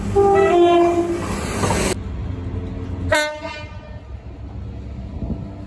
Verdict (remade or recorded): recorded